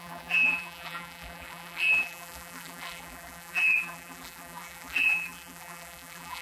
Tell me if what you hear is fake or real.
fake